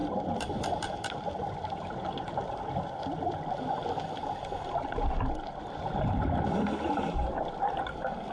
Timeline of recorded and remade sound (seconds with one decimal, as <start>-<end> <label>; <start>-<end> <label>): 0.0-3.2 remade; 3.2-4.2 recorded; 4.2-5.9 remade; 5.9-8.3 recorded